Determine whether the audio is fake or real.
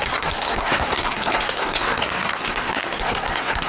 fake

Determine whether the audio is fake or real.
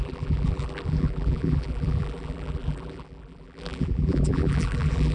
fake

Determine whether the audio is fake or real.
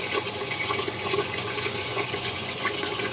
fake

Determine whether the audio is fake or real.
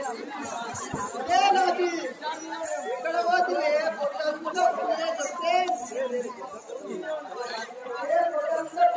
real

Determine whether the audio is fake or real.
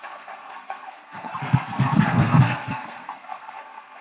fake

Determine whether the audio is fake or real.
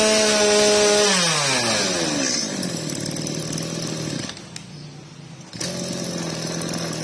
real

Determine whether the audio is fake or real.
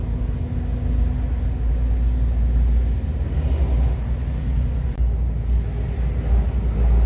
real